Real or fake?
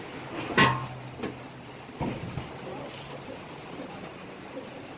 real